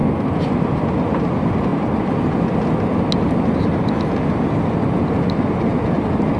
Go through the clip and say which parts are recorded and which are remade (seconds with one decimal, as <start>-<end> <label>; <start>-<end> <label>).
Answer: 0.0-6.4 recorded